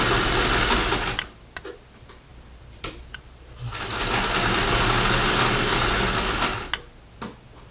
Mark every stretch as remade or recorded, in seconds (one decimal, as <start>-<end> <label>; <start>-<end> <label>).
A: 0.0-2.3 recorded; 2.3-4.1 remade; 4.1-7.7 recorded